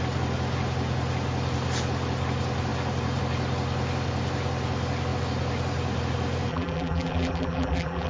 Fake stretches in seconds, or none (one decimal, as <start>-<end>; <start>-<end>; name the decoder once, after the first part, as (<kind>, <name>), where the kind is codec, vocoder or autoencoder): 6.5-8.1 (vocoder, BigVGAN v2)